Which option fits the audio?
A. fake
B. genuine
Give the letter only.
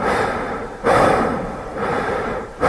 A